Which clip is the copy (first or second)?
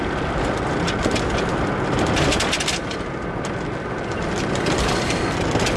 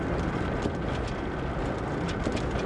first